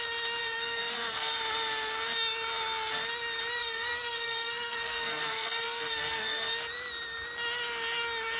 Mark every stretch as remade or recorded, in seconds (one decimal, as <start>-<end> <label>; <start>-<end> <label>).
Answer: 0.0-0.4 recorded; 0.4-1.4 remade; 1.4-3.6 recorded; 3.6-6.5 remade; 6.5-8.4 recorded